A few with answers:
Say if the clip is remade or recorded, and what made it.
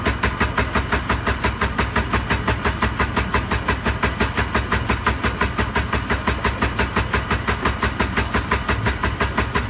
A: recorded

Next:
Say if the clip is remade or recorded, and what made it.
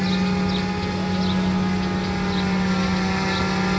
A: recorded